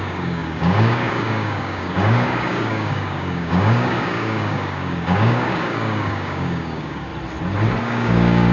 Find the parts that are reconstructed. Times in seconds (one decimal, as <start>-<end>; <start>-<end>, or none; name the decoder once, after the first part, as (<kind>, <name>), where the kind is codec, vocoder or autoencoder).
0.0-7.1 (codec, DAC); 7.8-8.5